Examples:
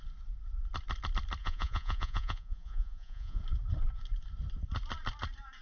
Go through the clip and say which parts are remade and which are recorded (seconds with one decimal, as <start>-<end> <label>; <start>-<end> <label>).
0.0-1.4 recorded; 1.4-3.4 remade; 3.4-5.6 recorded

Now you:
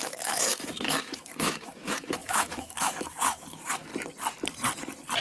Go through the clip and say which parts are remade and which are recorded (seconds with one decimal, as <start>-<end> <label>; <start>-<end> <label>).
0.0-3.9 remade; 3.9-5.2 recorded

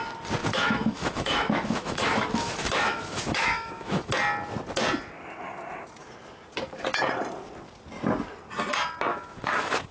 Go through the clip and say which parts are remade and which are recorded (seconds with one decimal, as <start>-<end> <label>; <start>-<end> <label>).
0.0-0.4 recorded; 0.4-4.1 remade; 4.1-9.1 recorded; 9.1-9.9 remade